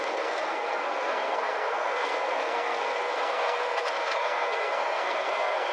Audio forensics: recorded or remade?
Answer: remade